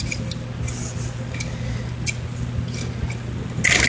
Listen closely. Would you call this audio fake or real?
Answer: real